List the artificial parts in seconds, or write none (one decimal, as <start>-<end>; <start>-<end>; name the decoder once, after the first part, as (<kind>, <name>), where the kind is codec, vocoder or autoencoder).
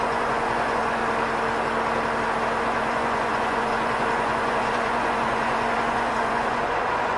0.0-1.0 (vocoder, Vocos); 2.6-7.2